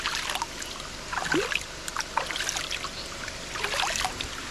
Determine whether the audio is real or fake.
real